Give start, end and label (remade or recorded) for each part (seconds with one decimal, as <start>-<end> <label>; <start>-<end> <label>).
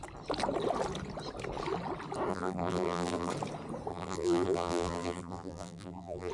0.0-2.3 recorded; 2.3-3.3 remade; 3.3-3.9 recorded; 3.9-6.3 remade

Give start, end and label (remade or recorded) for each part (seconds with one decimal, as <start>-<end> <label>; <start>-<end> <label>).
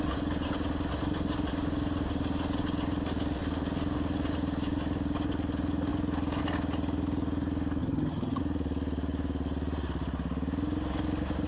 0.0-7.8 recorded; 7.8-8.4 remade; 8.4-11.5 recorded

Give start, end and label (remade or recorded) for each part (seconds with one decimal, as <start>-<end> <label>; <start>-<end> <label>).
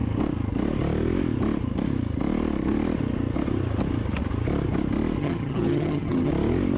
0.0-5.2 recorded; 5.2-6.3 remade; 6.3-6.8 recorded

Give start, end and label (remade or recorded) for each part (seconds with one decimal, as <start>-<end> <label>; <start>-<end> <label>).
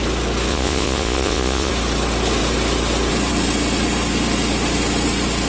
0.0-0.5 recorded; 0.5-1.7 remade; 1.7-5.5 recorded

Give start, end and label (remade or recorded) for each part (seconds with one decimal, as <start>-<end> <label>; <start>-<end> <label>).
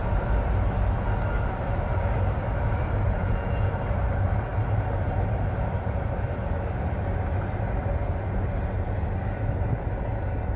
0.0-3.2 recorded; 3.2-3.7 remade; 3.7-10.6 recorded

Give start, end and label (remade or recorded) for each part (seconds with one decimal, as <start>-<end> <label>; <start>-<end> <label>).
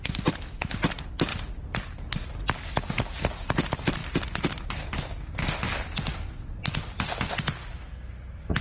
0.0-8.6 recorded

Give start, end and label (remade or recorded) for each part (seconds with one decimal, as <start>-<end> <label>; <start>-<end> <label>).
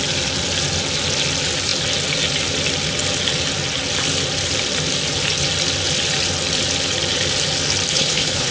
0.0-7.9 recorded; 7.9-8.5 remade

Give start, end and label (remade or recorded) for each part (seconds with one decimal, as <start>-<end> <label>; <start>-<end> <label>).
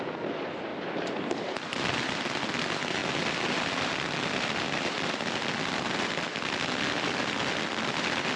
0.0-8.4 recorded